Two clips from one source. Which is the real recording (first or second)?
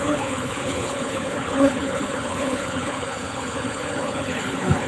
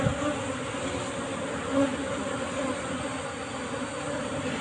second